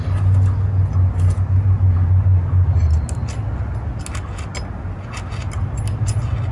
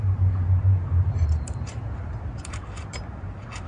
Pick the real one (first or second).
first